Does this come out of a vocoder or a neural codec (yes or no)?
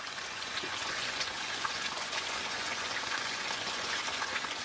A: yes